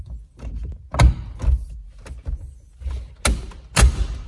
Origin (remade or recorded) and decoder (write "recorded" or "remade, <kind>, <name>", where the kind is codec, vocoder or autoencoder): recorded